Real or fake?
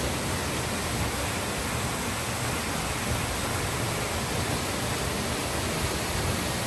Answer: real